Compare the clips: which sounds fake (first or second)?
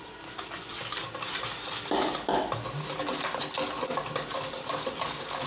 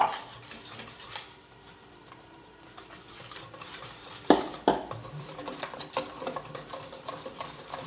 second